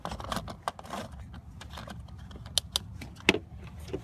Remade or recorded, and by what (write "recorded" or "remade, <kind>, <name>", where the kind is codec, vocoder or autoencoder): recorded